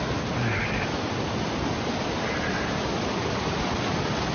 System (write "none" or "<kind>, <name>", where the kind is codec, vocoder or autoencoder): none